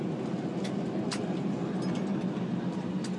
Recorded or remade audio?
recorded